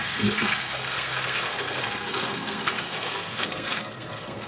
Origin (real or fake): fake